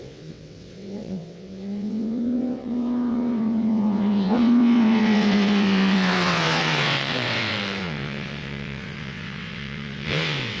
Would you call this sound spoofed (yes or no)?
yes